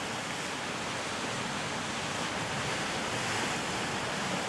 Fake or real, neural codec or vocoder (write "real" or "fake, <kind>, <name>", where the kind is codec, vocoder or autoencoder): real